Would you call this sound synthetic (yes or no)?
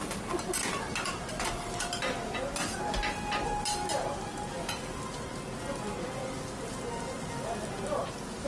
no